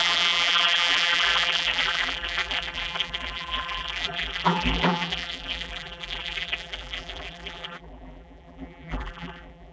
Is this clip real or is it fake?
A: fake